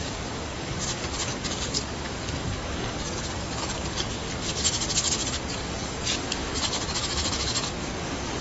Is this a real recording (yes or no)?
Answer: no